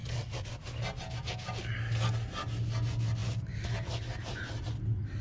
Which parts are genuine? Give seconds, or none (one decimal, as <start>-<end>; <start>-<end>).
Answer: 0.0-5.2